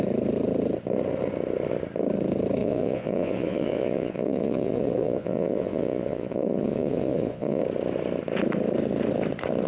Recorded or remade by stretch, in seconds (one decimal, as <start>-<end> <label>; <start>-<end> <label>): 0.0-2.6 recorded; 2.6-7.6 remade; 7.6-9.7 recorded